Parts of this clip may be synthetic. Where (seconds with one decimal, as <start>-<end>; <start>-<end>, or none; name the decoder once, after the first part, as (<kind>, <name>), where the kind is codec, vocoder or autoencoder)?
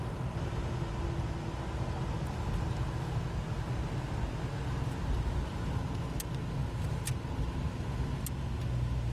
6.6-7.1 (vocoder, BigVGAN v2)